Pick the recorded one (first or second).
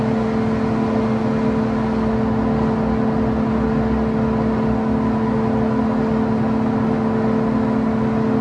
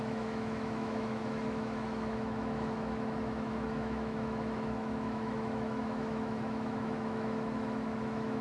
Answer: first